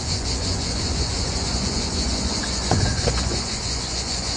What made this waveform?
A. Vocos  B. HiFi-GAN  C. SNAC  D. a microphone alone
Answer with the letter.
A